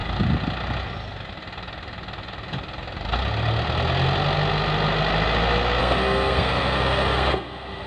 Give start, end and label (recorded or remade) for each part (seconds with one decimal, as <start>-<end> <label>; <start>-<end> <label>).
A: 0.0-5.8 recorded; 5.8-7.9 remade

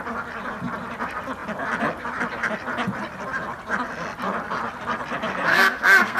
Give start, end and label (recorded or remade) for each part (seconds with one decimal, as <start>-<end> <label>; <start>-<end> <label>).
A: 0.0-5.5 recorded; 5.5-6.2 remade

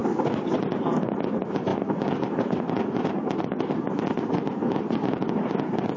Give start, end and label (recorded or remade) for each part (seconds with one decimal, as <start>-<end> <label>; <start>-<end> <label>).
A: 0.0-6.0 recorded